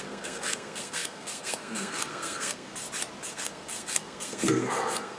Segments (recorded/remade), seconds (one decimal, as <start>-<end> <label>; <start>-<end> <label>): 0.0-2.7 remade; 2.7-3.3 recorded; 3.3-5.2 remade